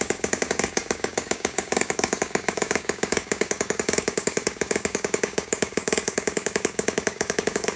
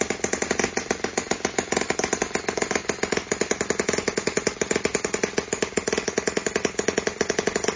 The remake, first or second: first